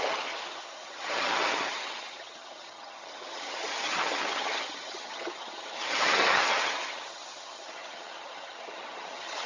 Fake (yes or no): yes